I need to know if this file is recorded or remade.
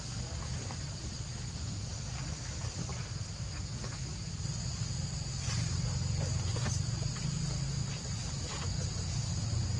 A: recorded